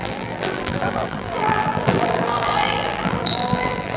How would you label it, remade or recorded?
remade